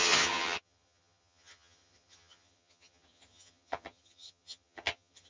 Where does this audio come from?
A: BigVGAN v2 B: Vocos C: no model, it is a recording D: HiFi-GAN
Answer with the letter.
D